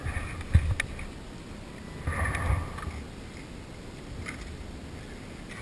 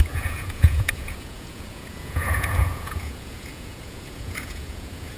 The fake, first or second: second